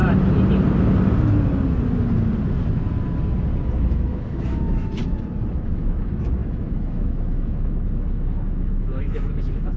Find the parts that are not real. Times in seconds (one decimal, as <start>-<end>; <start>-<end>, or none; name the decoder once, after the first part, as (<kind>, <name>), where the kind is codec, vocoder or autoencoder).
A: 3.6-5.0 (autoencoder, DAC-VAE); 5.5-9.8